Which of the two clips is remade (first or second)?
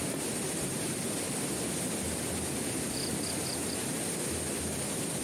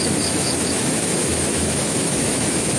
second